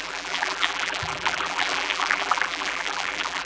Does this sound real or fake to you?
fake